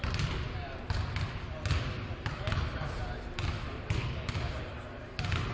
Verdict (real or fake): real